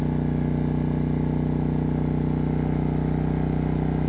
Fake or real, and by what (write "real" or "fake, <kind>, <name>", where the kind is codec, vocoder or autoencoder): real